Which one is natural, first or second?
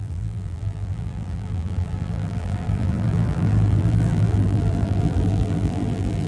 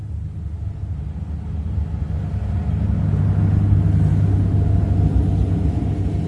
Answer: second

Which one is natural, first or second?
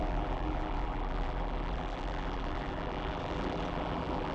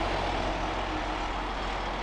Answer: second